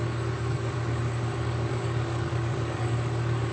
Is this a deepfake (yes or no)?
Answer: yes